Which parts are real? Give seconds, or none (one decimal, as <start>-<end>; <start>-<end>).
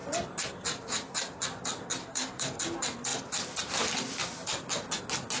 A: 0.0-2.0; 2.6-5.4